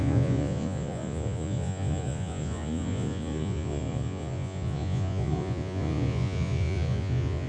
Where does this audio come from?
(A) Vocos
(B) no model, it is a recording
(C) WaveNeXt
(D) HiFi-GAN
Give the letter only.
A